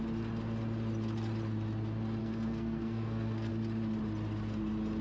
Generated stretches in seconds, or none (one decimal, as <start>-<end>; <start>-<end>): 2.2-3.5